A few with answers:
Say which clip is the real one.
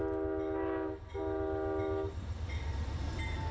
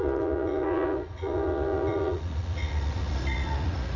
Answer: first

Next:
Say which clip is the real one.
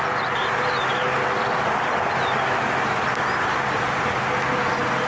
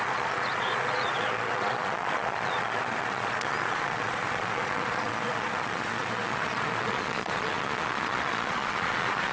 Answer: first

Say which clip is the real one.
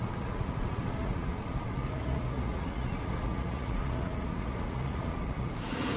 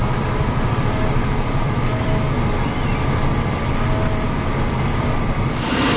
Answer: second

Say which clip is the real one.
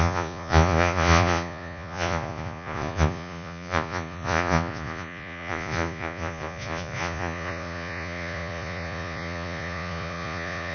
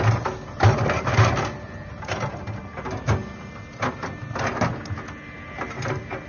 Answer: second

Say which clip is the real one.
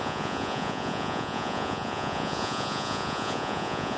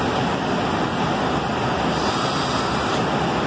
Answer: second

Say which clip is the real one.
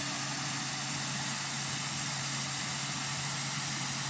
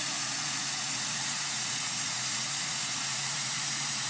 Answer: first